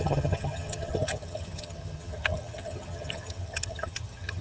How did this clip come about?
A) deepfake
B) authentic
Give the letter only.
A